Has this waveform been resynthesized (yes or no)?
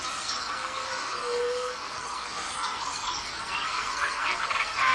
yes